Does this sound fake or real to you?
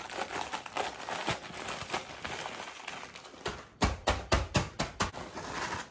real